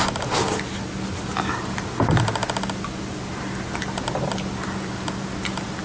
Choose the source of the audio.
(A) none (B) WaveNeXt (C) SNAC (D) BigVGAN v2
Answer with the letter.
A